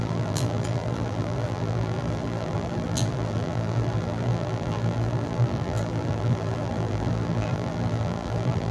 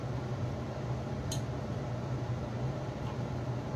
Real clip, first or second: second